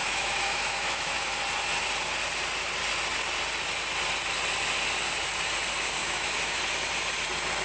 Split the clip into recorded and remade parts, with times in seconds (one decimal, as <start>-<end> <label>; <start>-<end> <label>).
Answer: 0.0-1.3 remade; 1.3-6.0 recorded; 6.0-6.6 remade; 6.6-7.6 recorded